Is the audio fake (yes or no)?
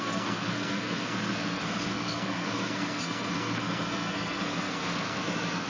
yes